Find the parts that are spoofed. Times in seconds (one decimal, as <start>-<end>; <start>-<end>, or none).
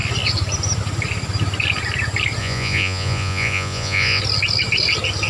2.4-4.2